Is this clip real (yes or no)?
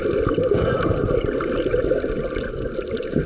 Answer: yes